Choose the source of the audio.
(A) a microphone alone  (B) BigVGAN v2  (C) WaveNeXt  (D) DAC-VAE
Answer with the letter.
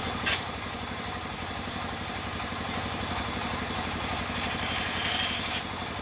B